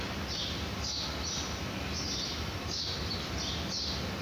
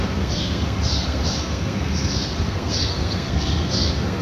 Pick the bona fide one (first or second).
first